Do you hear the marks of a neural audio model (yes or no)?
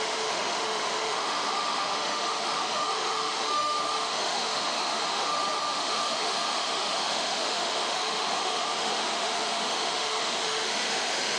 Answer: yes